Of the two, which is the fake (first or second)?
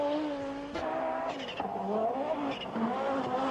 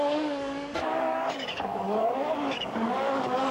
second